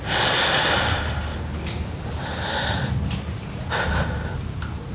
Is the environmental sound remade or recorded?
recorded